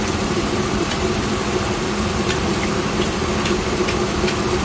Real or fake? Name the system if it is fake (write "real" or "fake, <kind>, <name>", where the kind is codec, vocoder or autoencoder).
fake, vocoder, BigVGAN v2